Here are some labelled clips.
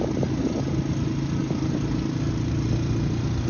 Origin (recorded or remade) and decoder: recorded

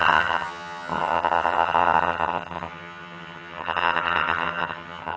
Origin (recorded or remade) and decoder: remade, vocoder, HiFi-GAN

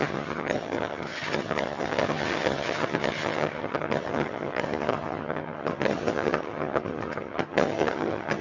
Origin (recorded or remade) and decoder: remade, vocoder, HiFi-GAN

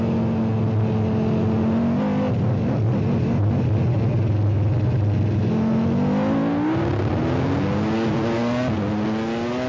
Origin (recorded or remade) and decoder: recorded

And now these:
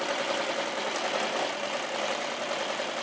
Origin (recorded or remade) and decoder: recorded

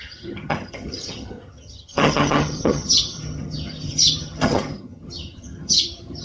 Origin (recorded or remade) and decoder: remade, vocoder, HiFi-GAN